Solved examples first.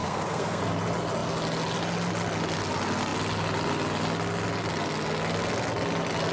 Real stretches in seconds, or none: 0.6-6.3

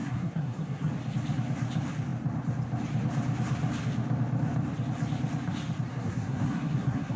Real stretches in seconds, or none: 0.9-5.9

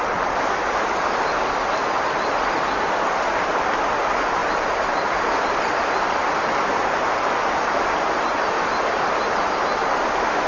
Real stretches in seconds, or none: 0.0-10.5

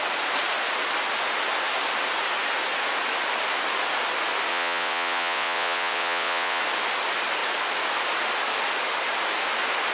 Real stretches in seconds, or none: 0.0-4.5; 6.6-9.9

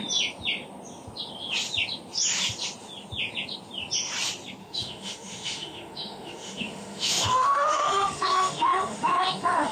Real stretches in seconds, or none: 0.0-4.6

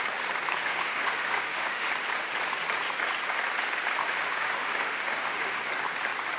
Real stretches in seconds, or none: 0.0-0.6; 1.9-4.0; 5.7-6.4

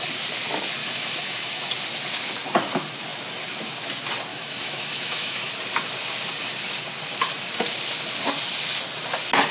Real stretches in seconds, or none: 0.0-0.8; 1.7-4.3; 5.5-9.5

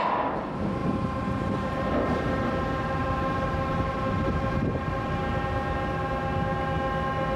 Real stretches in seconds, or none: 0.0-0.8; 5.2-7.4